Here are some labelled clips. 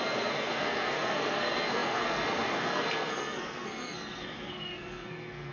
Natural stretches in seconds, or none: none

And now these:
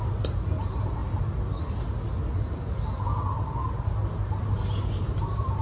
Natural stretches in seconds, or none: 1.0-4.4